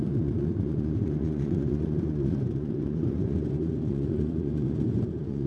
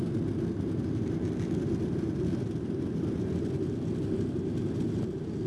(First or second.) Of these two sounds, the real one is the second